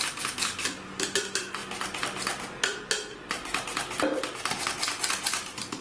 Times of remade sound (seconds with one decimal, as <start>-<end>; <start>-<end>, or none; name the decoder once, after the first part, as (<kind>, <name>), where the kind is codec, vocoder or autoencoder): none